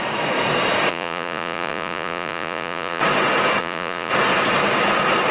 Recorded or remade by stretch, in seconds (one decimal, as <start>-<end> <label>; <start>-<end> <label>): 0.0-0.9 recorded; 0.9-3.0 remade; 3.0-3.6 recorded; 3.6-4.1 remade; 4.1-5.3 recorded